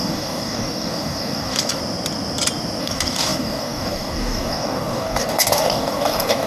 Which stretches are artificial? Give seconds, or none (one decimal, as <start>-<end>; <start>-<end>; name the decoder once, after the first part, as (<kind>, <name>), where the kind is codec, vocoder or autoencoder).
0.0-1.8 (codec, DAC); 2.8-6.5